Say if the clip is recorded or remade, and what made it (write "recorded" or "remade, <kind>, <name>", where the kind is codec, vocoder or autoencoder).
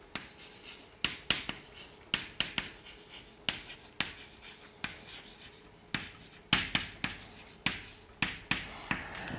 recorded